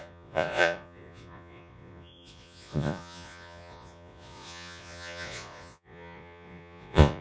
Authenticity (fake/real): fake